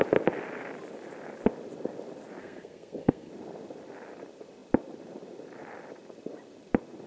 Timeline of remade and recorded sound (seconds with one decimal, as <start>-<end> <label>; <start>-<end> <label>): 0.0-2.4 recorded; 2.4-3.3 remade; 3.3-7.1 recorded